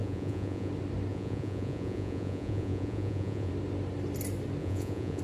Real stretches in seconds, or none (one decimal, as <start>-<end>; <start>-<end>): 0.7-1.1; 3.5-4.6